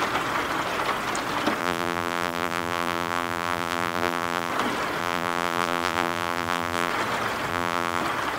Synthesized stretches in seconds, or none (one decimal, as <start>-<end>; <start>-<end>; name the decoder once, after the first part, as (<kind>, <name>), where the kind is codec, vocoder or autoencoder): 1.6-4.5 (vocoder, BigVGAN v2); 5.0-6.9; 7.5-8.0